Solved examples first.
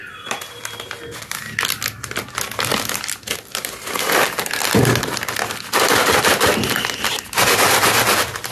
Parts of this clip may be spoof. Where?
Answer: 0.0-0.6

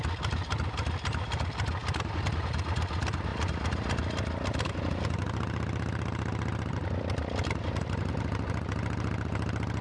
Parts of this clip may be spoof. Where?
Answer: none

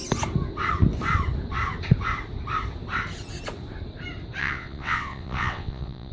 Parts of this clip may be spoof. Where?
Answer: 4.4-6.1